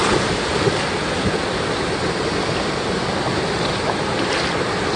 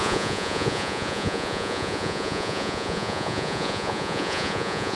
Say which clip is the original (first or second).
first